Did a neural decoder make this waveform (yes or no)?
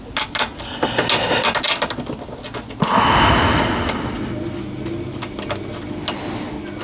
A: no